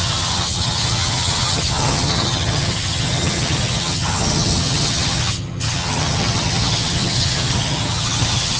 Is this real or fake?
fake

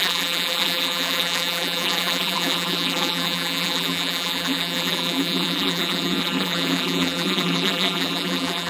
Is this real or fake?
fake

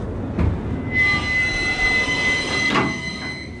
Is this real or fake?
real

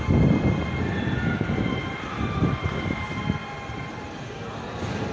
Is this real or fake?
real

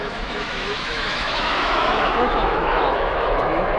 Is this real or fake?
fake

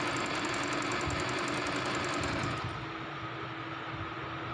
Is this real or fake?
real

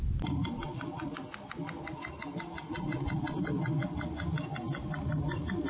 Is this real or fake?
real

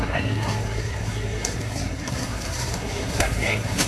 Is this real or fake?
fake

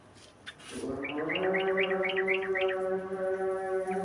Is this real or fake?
real